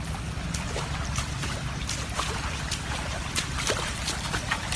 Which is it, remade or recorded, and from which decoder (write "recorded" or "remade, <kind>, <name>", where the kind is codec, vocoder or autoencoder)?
recorded